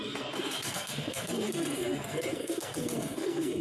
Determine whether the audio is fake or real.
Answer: fake